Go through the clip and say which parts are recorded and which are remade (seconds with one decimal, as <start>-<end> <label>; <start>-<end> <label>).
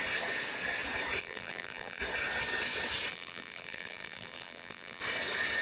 0.0-1.2 recorded; 1.2-2.0 remade; 2.0-3.1 recorded; 3.1-5.0 remade; 5.0-5.6 recorded